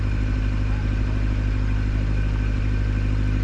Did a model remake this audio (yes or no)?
no